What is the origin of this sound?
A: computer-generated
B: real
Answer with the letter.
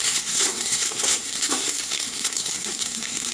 A